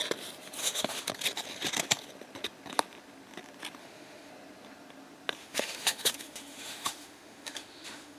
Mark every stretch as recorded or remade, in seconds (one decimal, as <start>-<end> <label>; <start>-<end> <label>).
0.0-0.6 recorded; 0.6-1.1 remade; 1.1-3.8 recorded; 3.8-4.3 remade; 4.3-5.4 recorded; 5.4-8.2 remade